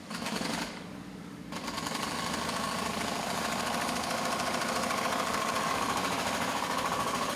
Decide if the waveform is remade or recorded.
remade